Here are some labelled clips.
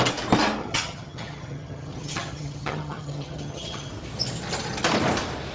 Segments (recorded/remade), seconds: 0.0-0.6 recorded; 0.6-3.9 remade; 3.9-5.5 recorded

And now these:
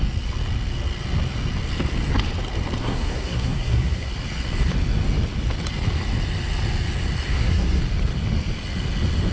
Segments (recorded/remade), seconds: 0.0-2.8 recorded; 2.8-4.1 remade; 4.1-7.3 recorded; 7.3-7.8 remade; 7.8-9.3 recorded

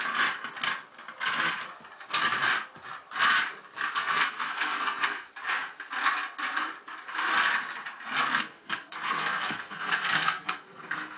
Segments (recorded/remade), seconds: 0.0-4.0 recorded; 4.0-5.3 remade; 5.3-8.3 recorded; 8.3-11.2 remade